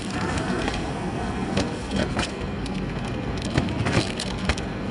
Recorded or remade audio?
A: remade